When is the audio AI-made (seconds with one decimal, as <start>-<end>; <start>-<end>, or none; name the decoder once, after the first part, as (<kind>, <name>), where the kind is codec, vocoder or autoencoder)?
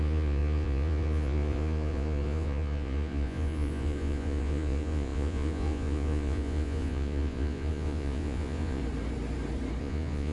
0.0-8.8 (vocoder, Vocos); 9.8-10.3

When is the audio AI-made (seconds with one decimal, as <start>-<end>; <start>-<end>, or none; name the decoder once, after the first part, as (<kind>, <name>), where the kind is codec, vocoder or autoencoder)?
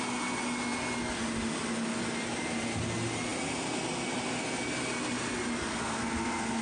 5.7-6.6 (codec, SNAC)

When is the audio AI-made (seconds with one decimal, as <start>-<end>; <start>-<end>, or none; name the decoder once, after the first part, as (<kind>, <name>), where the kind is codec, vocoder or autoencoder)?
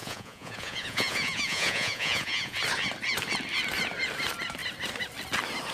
0.0-2.6 (vocoder, Vocos)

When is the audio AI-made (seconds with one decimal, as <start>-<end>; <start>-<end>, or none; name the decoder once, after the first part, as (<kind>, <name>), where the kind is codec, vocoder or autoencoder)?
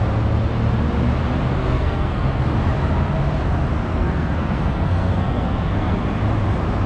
1.6-2.4 (codec, SNAC); 3.9-6.2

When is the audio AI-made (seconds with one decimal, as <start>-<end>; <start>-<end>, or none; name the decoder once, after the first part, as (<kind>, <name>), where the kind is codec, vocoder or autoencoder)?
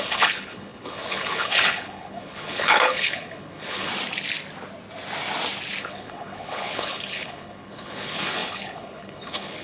0.0-3.9 (codec, HILCodec); 5.8-9.6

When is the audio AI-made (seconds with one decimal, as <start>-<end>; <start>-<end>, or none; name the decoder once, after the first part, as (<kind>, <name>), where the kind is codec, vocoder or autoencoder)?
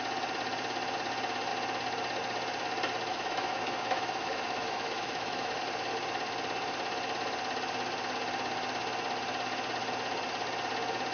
3.1-5.6 (autoencoder, DAC-VAE)